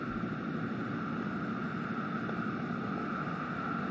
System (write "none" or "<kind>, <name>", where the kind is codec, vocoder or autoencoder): none